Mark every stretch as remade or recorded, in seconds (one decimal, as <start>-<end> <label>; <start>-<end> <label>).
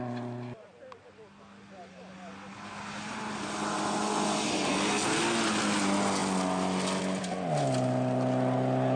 0.0-9.0 recorded